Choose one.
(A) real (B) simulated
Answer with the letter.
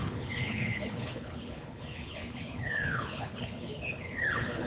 B